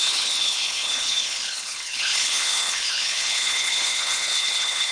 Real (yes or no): no